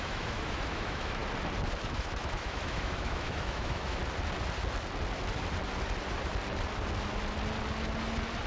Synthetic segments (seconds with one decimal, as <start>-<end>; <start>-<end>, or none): 0.0-1.2; 1.8-4.0